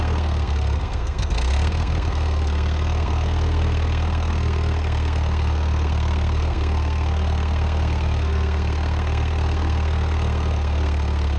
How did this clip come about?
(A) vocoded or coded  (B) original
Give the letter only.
A